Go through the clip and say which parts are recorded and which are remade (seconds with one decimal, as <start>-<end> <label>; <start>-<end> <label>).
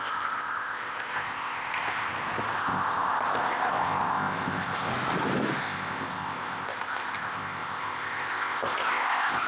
0.0-2.1 remade; 2.1-2.6 recorded; 2.6-4.9 remade; 4.9-5.6 recorded; 5.6-9.5 remade